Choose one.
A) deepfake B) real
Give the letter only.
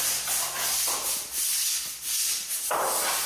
B